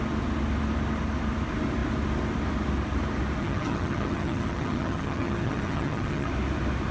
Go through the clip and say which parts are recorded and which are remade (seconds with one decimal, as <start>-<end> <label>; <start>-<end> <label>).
0.0-3.4 recorded; 3.4-6.3 remade; 6.3-6.9 recorded